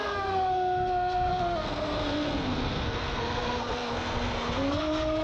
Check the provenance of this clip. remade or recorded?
remade